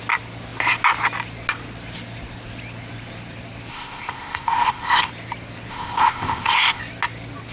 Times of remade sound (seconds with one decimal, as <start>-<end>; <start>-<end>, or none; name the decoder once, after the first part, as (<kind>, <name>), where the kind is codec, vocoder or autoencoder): 3.7-5.1 (codec, ZipCodec); 5.7-6.8